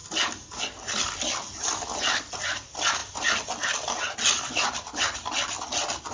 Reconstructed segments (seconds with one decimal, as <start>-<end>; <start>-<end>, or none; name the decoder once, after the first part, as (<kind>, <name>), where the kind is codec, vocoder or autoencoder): none